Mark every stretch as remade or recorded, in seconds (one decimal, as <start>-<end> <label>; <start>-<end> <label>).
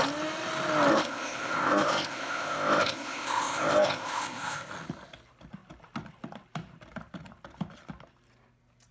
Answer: 0.0-0.9 recorded; 0.9-4.7 remade; 4.7-8.9 recorded